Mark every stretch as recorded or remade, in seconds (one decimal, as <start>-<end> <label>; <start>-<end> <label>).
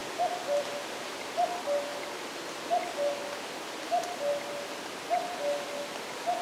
0.0-6.4 recorded